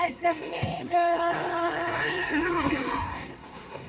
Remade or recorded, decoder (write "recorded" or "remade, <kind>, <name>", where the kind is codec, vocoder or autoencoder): remade, codec, SNAC